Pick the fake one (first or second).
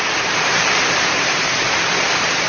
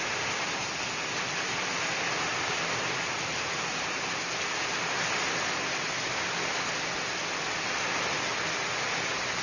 first